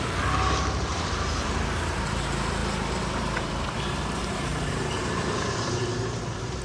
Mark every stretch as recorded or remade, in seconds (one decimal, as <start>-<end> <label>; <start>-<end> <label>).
0.0-0.9 recorded; 0.9-2.2 remade; 2.2-2.6 recorded; 2.6-6.6 remade